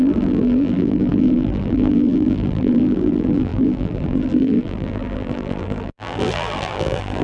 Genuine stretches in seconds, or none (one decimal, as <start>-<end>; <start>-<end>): none